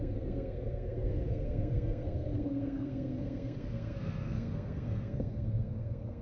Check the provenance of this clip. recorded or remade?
remade